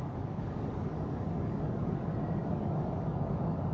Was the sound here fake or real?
fake